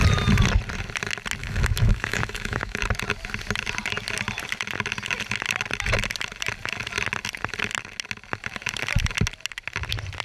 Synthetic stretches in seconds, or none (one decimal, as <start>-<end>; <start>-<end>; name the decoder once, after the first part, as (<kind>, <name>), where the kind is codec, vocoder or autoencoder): 1.4-2.8 (autoencoder, DAC-VAE)